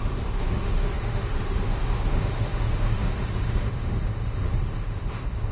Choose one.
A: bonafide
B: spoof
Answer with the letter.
B